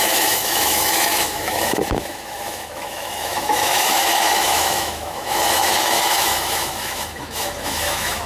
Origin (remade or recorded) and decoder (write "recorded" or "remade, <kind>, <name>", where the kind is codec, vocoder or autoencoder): remade, autoencoder, DAC-VAE